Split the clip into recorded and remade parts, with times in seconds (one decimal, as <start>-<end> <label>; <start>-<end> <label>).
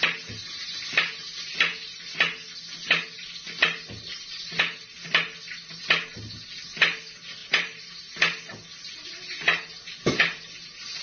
0.0-3.6 recorded; 3.6-4.6 remade; 4.6-7.4 recorded; 7.4-7.9 remade; 7.9-11.0 recorded